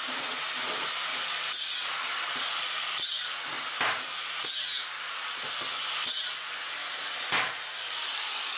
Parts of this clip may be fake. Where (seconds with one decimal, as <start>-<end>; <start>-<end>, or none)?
none